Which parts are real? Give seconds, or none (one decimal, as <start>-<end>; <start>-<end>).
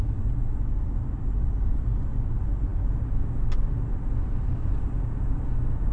0.0-5.9